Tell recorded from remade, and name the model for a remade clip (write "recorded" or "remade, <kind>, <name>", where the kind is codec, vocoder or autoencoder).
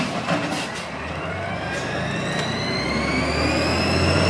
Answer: recorded